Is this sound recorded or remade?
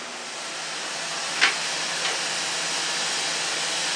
recorded